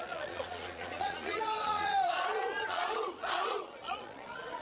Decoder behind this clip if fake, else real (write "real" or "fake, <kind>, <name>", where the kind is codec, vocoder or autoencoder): fake, vocoder, Vocos